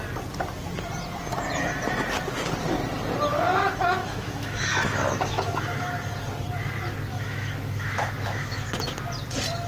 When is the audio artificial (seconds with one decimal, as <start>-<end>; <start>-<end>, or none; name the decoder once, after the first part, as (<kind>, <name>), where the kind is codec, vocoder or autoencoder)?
4.0-5.9 (autoencoder, DAC-VAE); 7.1-8.7

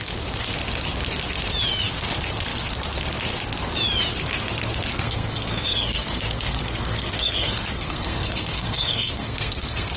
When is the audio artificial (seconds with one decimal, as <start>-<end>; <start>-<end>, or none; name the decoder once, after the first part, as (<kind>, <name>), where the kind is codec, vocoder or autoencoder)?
4.9-10.0 (codec, SNAC)

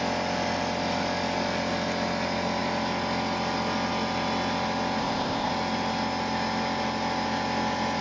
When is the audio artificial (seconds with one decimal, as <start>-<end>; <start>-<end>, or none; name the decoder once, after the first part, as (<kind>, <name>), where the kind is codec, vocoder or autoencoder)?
5.0-5.5 (codec, ZipCodec)

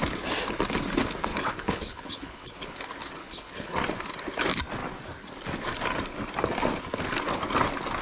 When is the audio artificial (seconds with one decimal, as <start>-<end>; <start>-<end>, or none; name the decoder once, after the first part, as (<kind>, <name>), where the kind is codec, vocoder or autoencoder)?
1.3-2.8 (codec, HILCodec); 3.2-3.7

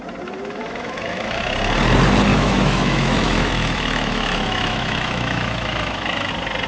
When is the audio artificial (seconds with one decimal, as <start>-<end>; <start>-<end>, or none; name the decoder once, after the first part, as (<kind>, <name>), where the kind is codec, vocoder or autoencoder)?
0.6-1.4 (autoencoder, DAC-VAE); 2.3-6.3

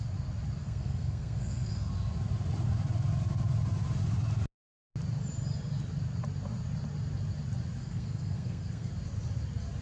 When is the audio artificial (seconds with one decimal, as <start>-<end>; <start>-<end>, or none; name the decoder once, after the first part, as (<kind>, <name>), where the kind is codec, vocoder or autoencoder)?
0.6-1.9 (codec, SNAC); 7.8-8.9

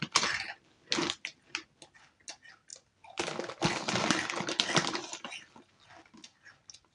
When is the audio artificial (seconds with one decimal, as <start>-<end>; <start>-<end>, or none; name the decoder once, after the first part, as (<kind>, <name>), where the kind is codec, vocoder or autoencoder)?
none

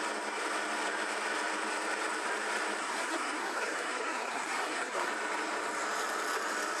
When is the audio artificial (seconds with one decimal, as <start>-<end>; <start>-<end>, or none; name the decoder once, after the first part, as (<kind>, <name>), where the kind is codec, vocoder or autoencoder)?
2.8-5.1 (codec, SNAC)